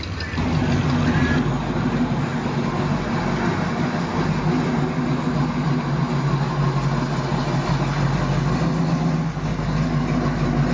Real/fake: real